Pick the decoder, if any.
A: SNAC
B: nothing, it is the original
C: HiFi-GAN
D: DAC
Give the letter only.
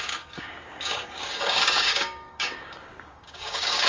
D